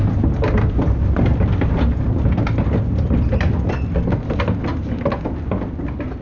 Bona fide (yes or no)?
yes